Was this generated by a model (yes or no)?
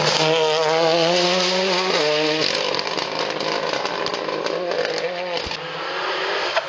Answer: no